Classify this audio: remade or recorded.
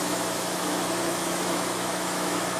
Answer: remade